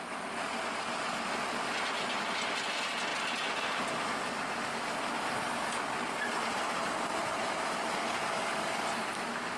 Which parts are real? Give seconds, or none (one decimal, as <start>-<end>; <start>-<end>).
0.0-9.6